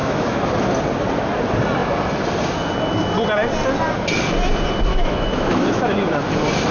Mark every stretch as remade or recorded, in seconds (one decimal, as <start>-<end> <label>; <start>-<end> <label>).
0.0-0.5 remade; 0.5-4.9 recorded; 4.9-6.2 remade; 6.2-6.7 recorded